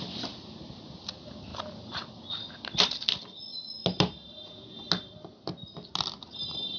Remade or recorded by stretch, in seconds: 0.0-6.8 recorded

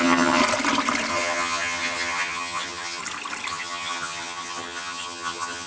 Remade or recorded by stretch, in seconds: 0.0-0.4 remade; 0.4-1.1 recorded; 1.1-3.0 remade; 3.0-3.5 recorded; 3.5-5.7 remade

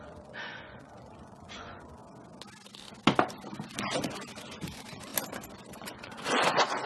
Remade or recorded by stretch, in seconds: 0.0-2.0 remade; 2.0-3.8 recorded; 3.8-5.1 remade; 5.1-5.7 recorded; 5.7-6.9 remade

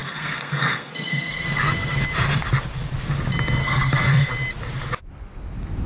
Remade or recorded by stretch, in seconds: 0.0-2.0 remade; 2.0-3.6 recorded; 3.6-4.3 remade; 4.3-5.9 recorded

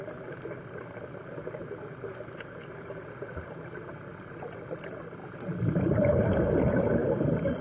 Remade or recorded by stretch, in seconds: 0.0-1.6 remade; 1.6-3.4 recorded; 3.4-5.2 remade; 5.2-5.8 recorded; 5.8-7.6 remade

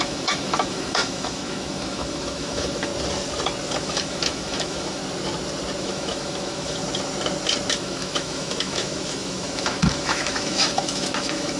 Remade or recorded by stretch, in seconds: 0.0-2.9 remade; 2.9-3.8 recorded; 3.8-5.0 remade; 5.0-5.8 recorded; 5.8-6.8 remade; 6.8-7.7 recorded; 7.7-11.6 remade